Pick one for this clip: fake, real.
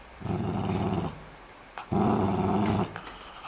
real